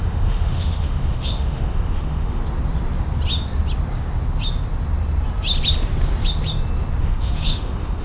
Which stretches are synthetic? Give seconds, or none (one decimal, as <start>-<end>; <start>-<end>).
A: 0.0-2.4; 7.0-8.0